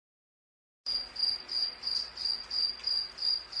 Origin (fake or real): real